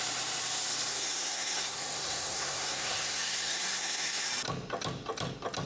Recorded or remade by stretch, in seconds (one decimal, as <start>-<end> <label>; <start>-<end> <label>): 0.0-0.9 recorded; 0.9-4.3 remade; 4.3-5.7 recorded